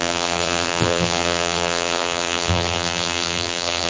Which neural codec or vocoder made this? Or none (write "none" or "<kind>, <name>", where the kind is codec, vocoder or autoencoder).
vocoder, BigVGAN v2